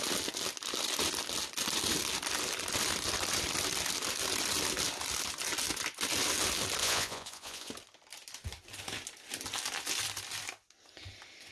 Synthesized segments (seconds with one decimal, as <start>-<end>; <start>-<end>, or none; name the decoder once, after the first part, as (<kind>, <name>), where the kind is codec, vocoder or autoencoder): 6.8-7.7 (vocoder, Vocos)